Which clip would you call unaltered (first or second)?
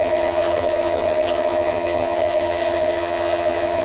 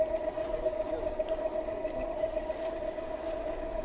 second